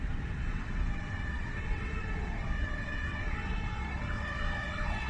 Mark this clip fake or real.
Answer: fake